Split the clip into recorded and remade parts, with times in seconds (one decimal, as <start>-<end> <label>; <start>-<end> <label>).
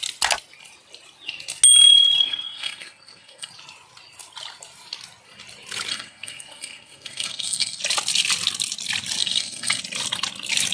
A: 0.0-2.2 recorded; 2.2-3.5 remade; 3.5-5.9 recorded; 5.9-7.8 remade; 7.8-9.2 recorded; 9.2-9.8 remade; 9.8-10.7 recorded